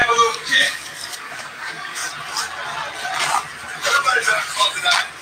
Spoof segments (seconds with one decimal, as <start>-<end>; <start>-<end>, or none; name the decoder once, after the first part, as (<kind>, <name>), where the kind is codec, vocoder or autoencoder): 0.0-2.0 (codec, DAC)